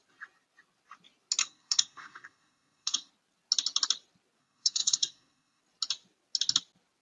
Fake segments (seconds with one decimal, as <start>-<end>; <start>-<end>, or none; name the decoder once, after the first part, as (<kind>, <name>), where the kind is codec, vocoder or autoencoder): 1.4-3.1 (codec, SNAC); 4.4-5.6